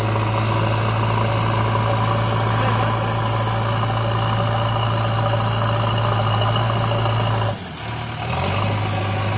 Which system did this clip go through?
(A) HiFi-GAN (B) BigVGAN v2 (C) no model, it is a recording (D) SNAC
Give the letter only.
C